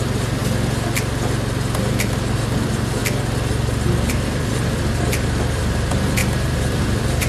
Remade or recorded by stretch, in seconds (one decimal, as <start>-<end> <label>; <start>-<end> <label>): 0.0-0.4 remade; 0.4-1.9 recorded; 1.9-3.0 remade; 3.0-4.1 recorded; 4.1-7.3 remade